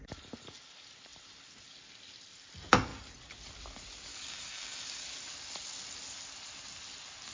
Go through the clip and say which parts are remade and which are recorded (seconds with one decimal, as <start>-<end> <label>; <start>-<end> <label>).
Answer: 0.0-4.1 recorded; 4.1-5.0 remade; 5.0-7.3 recorded

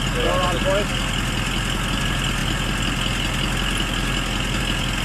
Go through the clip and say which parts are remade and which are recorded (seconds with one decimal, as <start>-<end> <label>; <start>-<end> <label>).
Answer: 0.0-5.0 recorded

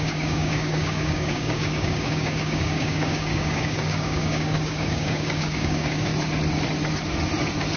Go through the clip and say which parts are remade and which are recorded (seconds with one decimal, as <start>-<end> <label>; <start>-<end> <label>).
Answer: 0.0-6.1 remade; 6.1-7.8 recorded

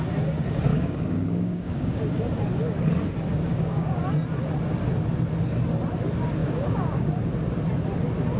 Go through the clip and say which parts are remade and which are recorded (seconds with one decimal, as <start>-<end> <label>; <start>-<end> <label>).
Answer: 0.0-0.7 recorded; 0.7-2.0 remade; 2.0-3.3 recorded; 3.3-4.0 remade; 4.0-6.4 recorded; 6.4-7.1 remade; 7.1-8.4 recorded

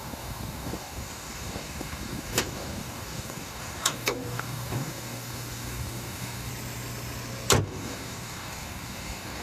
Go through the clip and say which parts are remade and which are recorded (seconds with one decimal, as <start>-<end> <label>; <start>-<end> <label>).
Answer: 0.0-6.5 remade; 6.5-7.6 recorded; 7.6-9.4 remade